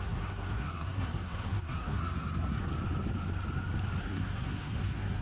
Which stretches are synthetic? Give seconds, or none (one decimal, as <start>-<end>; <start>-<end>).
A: 0.0-2.7; 4.0-5.2